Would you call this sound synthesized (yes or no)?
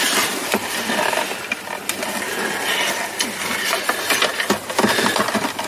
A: no